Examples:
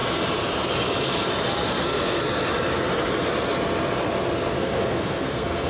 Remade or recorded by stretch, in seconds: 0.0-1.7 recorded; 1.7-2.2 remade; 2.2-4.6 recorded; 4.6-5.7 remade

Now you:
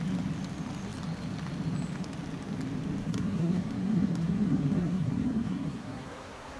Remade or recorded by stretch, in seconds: 0.0-3.0 recorded; 3.0-6.6 remade

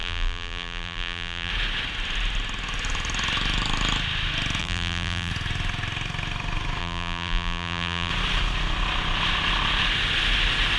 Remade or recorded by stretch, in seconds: 0.0-1.5 remade; 1.5-4.6 recorded; 4.6-5.3 remade; 5.3-6.8 recorded; 6.8-8.1 remade; 8.1-10.8 recorded

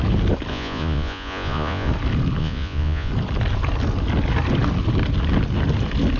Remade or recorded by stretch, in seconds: 0.0-0.5 recorded; 0.5-1.9 remade; 1.9-2.4 recorded; 2.4-3.1 remade; 3.1-6.2 recorded

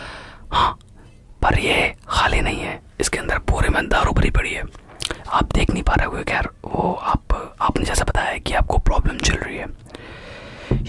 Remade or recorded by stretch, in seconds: 0.0-10.9 recorded

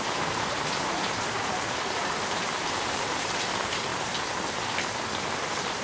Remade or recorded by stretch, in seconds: 0.0-3.9 remade; 3.9-5.3 recorded; 5.3-5.8 remade